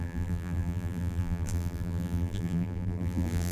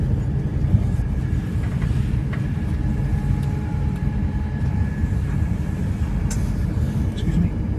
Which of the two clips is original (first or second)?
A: second